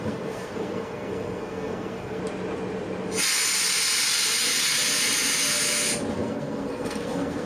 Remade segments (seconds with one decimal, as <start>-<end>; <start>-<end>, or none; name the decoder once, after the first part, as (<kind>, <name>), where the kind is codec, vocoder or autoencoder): 0.0-2.2 (codec, SNAC); 6.1-7.5